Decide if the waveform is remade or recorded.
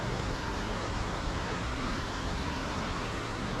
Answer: remade